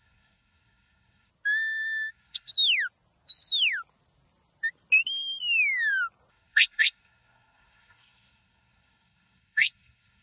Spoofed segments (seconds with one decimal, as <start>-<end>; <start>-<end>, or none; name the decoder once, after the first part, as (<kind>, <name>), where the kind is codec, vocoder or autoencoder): 0.0-1.3 (codec, SNAC); 2.1-2.5; 6.3-10.2